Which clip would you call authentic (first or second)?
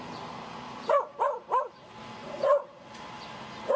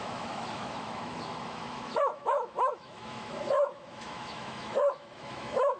first